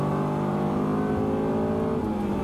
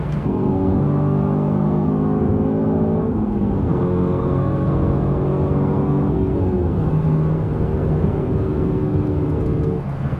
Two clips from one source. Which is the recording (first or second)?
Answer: first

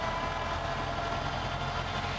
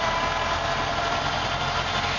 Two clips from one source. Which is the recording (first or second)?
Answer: first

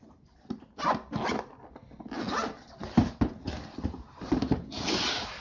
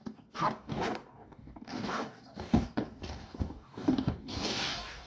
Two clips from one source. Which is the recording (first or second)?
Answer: first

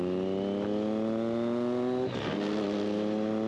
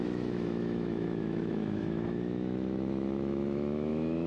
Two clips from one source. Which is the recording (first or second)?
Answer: first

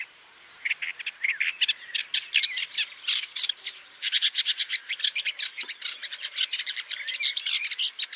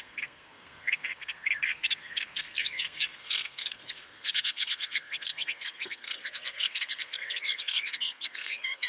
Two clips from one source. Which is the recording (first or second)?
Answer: first